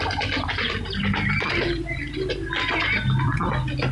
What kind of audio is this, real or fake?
real